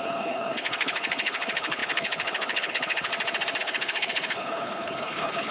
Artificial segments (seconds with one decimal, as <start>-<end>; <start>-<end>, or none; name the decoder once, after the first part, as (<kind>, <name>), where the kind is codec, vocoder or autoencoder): 0.0-3.1 (codec, HILCodec); 3.6-5.5